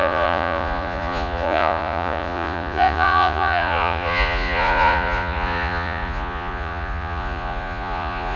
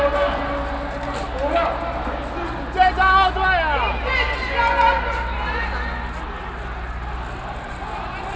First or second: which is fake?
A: first